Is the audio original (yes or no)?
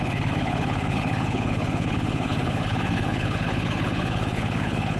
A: no